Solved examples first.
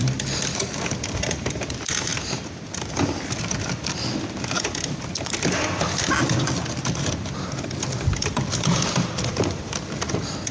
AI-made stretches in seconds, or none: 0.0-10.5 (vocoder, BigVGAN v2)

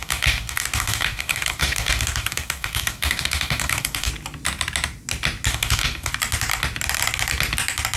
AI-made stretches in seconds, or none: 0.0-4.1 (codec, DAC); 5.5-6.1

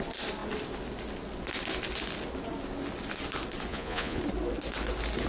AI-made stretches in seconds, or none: 3.7-4.2 (vocoder, Vocos)

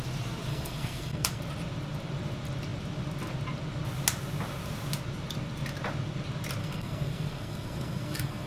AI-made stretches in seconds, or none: 0.5-1.4 (codec, SNAC); 6.6-8.5

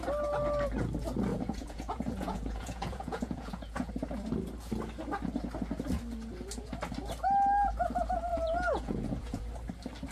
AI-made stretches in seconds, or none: 1.3-3.9 (vocoder, Vocos); 8.3-9.5